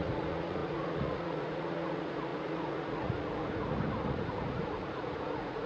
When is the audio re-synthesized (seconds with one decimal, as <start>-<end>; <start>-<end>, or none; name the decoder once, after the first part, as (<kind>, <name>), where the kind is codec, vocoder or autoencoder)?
0.0-5.7 (vocoder, Vocos)